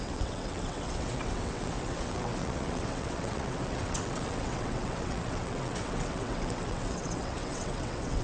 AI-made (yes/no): yes